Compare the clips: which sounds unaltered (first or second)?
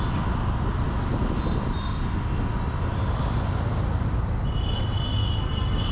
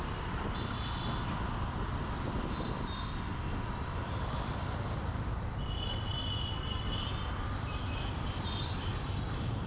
first